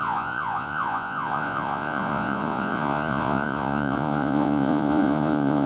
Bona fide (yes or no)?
no